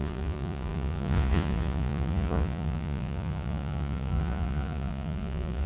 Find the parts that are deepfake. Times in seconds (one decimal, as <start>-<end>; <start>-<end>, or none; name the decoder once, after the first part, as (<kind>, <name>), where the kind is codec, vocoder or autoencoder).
0.0-5.7 (vocoder, Vocos)